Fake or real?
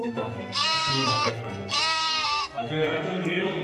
fake